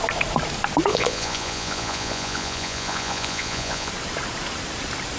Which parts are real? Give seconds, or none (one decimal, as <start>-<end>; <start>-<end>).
0.0-0.9; 3.9-5.2

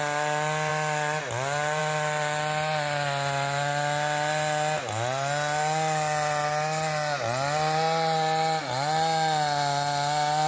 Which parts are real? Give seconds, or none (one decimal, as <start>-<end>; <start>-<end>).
0.0-10.5

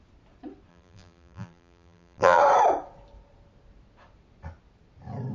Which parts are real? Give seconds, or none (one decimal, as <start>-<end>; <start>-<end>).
0.0-0.7; 2.4-5.3

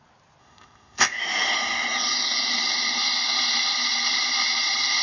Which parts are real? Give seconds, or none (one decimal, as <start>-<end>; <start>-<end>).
0.0-0.4; 1.2-5.0

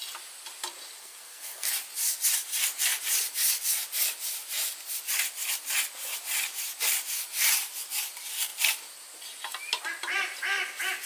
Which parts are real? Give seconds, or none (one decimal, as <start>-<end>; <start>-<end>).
0.0-1.0; 1.7-11.1

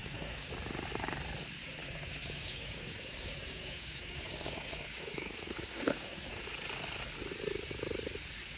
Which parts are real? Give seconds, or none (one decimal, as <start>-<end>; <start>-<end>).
0.5-1.8; 6.5-8.6

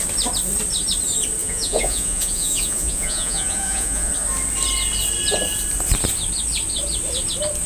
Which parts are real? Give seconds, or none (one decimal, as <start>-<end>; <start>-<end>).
0.0-1.4; 4.1-7.7